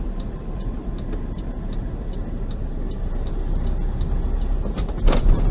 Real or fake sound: real